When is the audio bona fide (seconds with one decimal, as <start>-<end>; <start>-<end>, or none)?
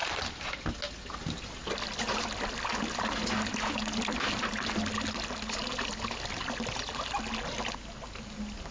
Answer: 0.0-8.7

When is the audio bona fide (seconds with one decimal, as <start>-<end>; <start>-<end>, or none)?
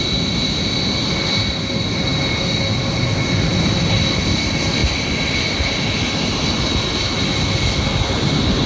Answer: 0.0-8.7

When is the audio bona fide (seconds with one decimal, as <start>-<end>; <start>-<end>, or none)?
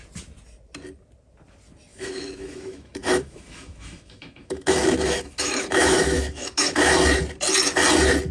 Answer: 0.0-1.9; 6.9-8.3